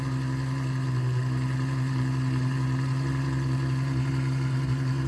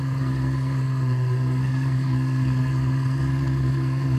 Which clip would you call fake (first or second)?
second